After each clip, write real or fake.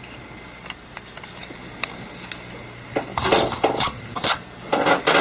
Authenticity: real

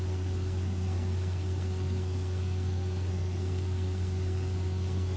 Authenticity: fake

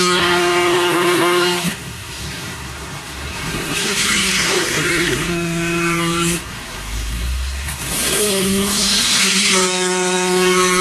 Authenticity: fake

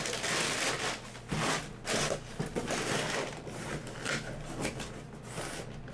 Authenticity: real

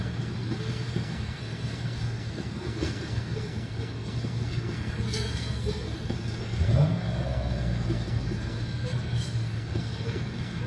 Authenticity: fake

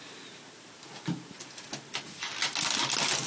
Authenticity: real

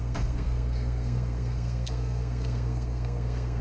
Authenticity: fake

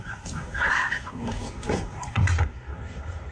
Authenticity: fake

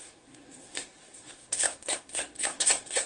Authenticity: fake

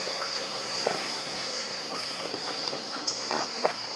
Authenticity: fake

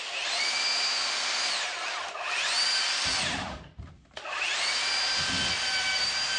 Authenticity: real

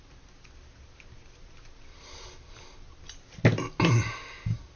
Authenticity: real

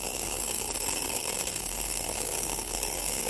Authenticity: fake